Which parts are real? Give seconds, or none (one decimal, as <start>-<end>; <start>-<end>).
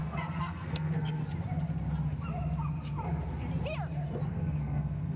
1.2-4.3